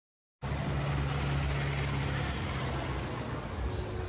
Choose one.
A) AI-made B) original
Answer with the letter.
B